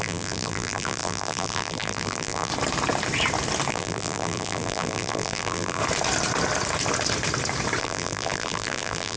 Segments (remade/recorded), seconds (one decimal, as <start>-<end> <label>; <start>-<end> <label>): 0.0-2.5 remade; 2.5-3.7 recorded; 3.7-5.8 remade; 5.8-7.8 recorded; 7.8-9.2 remade